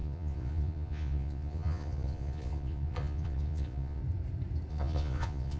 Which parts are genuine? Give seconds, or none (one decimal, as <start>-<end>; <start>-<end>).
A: 4.0-4.7

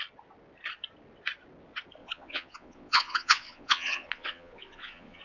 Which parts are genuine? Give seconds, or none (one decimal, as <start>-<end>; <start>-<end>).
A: 0.0-2.0

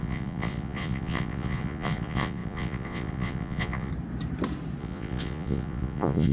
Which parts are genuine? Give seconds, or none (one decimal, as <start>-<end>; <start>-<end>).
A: 3.9-4.8

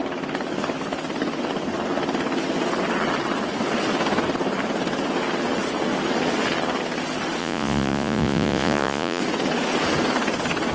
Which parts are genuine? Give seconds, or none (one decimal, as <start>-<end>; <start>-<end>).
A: 0.0-7.4; 9.2-10.7

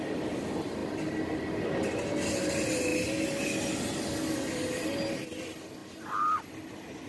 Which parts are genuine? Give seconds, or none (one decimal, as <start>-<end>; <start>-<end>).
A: 0.0-7.1

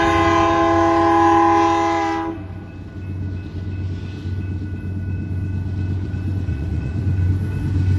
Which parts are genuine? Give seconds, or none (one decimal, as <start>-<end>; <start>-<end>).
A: 0.0-6.0; 7.3-8.0